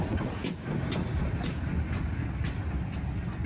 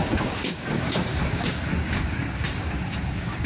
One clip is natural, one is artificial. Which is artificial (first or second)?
second